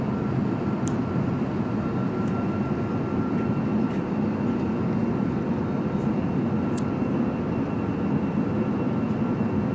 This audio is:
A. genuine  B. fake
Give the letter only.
A